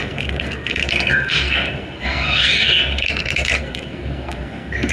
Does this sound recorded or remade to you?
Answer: remade